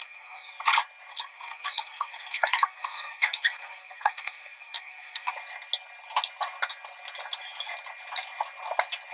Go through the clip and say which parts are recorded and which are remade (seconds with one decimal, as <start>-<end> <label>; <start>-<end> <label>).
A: 0.0-0.5 remade; 0.5-1.1 recorded; 1.1-5.3 remade; 5.3-9.1 recorded